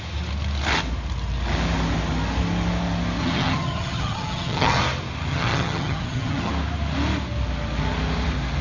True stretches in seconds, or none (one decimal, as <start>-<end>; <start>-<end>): 0.0-3.2; 4.8-5.3; 6.5-8.6